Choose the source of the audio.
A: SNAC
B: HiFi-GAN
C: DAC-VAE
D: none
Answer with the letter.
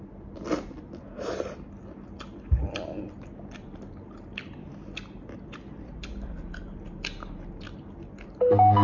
D